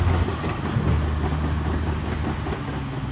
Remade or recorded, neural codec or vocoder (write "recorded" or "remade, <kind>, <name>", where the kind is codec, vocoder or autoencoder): recorded